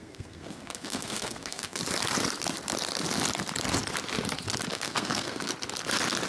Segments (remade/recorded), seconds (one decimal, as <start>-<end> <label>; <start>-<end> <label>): 0.0-1.8 remade; 1.8-4.7 recorded; 4.7-5.5 remade; 5.5-6.3 recorded